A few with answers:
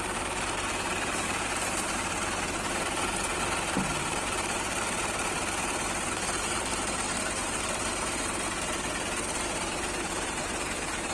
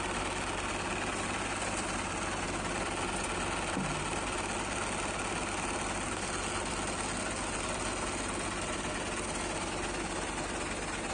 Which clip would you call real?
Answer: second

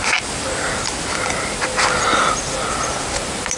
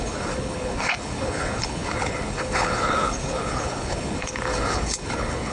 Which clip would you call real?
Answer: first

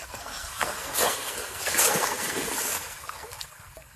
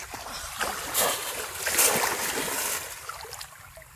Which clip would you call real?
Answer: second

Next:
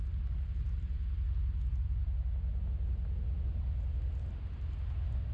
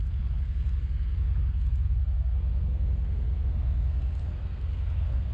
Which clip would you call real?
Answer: first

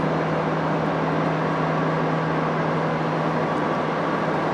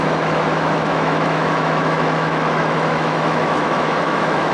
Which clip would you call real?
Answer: first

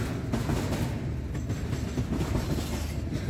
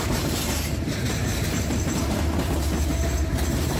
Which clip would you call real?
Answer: first